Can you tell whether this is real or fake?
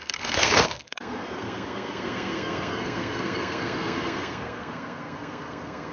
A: fake